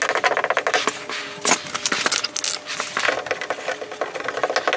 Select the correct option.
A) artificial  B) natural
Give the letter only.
B